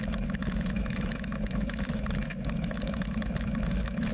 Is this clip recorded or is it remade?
remade